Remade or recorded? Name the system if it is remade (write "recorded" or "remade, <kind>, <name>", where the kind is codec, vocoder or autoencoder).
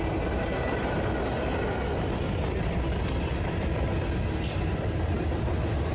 recorded